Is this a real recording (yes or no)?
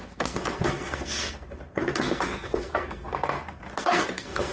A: no